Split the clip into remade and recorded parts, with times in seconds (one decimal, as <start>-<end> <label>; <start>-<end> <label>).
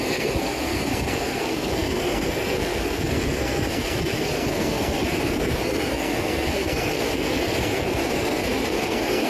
0.0-9.3 remade